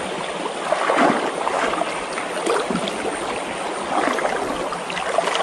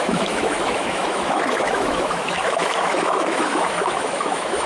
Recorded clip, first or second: first